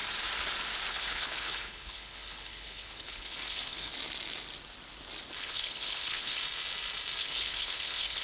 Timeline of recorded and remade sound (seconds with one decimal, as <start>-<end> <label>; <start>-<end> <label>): 0.0-0.9 recorded; 0.9-3.9 remade; 3.9-5.4 recorded; 5.4-6.4 remade; 6.4-7.2 recorded; 7.2-8.2 remade